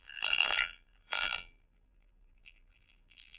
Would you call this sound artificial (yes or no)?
yes